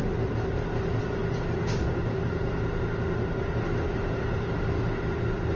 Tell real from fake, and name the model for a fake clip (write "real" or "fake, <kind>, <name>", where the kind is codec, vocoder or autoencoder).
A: real